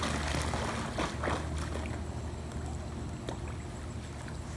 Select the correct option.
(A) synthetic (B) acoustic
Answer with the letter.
B